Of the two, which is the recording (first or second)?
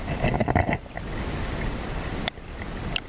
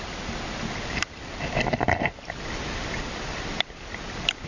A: second